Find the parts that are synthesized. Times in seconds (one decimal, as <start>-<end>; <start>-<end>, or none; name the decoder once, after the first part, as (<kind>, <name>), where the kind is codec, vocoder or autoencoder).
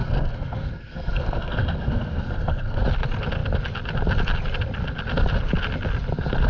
0.0-2.8 (codec, SNAC)